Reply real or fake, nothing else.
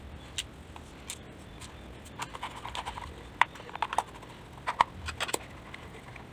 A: real